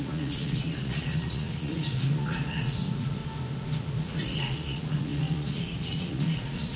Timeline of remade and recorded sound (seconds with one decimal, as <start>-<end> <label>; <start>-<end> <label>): 0.0-3.2 remade; 3.2-3.8 recorded; 3.8-6.8 remade